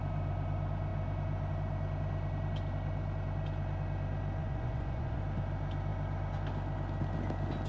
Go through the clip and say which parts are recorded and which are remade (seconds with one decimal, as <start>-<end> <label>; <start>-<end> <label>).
0.0-4.4 recorded; 4.4-5.2 remade; 5.2-7.7 recorded